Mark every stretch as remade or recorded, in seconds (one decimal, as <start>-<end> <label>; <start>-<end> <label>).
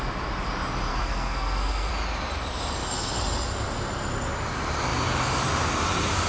0.0-0.9 recorded; 0.9-1.9 remade; 1.9-6.3 recorded